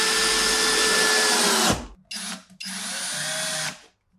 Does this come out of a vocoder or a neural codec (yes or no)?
no